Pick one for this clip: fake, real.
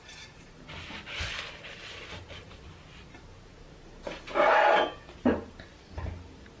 real